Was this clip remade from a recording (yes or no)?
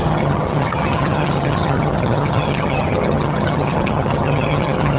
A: yes